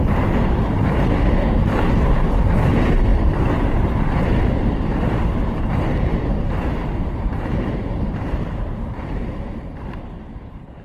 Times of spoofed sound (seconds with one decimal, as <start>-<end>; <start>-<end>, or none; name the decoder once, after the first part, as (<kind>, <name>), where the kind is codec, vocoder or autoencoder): 0.0-10.8 (vocoder, BigVGAN v2)